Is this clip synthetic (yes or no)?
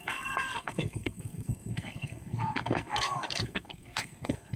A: yes